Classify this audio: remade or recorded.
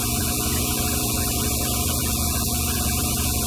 remade